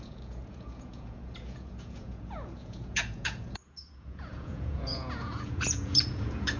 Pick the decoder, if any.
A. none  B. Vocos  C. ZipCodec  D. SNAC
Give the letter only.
B